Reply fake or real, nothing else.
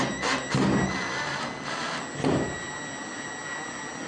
real